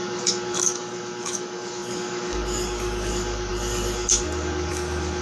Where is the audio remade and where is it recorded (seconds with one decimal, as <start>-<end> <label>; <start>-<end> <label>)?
0.0-5.2 remade